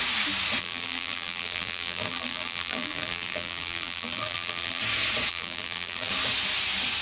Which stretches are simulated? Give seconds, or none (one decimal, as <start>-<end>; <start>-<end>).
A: 0.6-4.8; 5.3-6.1